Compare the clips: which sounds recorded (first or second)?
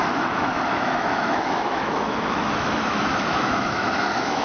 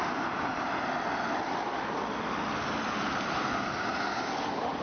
second